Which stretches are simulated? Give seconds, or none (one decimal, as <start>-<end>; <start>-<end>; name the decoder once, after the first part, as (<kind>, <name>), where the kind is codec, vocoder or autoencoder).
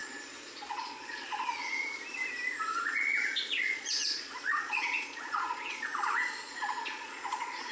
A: 0.0-2.0 (vocoder, Vocos); 2.7-7.7